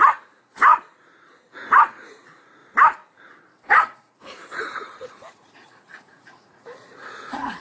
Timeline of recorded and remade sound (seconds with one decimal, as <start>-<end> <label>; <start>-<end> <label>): 0.0-0.7 remade; 0.7-1.5 recorded; 1.5-2.6 remade; 2.6-3.7 recorded; 3.7-7.6 remade